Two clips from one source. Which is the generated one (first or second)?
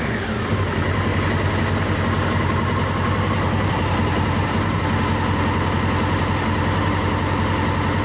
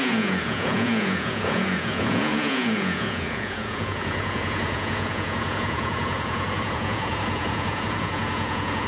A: second